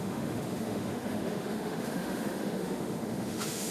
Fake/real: fake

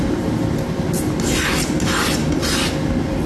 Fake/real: real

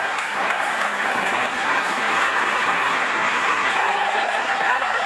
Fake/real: fake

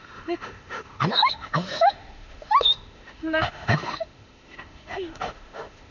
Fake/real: fake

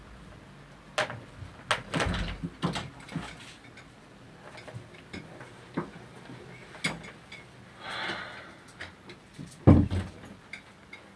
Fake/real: real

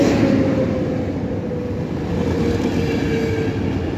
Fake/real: real